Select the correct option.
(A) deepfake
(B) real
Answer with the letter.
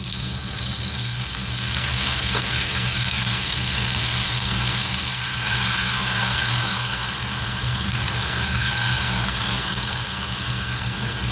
A